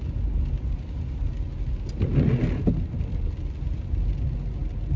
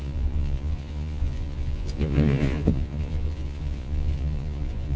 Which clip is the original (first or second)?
first